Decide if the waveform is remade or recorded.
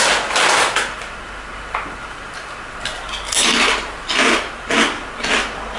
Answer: recorded